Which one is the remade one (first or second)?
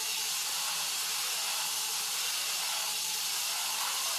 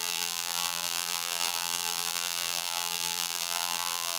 second